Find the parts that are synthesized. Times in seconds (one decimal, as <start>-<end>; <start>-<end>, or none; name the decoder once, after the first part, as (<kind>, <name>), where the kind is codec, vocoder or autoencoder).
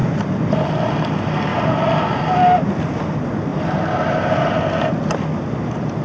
none